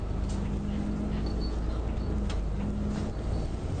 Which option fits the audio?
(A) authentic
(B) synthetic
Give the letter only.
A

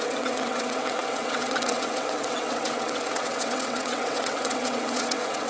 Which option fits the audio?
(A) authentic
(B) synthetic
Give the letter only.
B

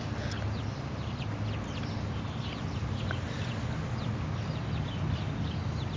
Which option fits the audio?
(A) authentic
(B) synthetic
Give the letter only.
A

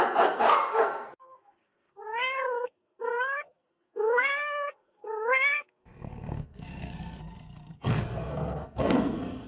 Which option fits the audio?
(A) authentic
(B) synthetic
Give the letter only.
B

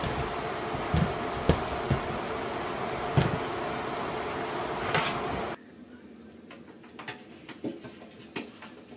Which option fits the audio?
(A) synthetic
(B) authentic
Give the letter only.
B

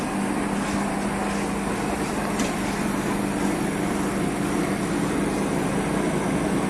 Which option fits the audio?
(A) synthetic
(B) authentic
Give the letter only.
B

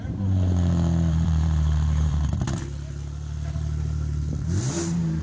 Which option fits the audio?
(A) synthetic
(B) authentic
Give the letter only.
A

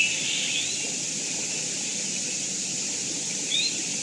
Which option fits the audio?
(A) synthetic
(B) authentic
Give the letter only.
B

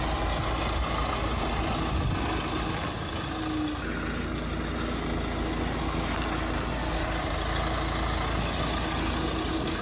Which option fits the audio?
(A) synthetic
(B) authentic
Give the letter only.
B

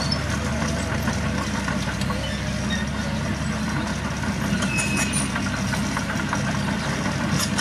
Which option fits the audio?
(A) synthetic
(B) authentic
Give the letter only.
B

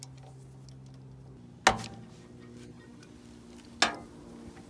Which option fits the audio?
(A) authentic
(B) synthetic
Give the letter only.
A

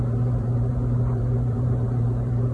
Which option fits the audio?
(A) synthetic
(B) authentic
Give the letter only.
A